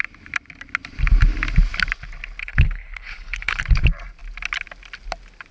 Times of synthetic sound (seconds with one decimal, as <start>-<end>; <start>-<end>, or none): 2.4-3.6